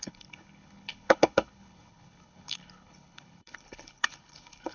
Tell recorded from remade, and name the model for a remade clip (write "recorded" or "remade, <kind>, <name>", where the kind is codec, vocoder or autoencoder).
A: remade, codec, HILCodec